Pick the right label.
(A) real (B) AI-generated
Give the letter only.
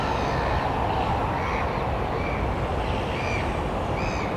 A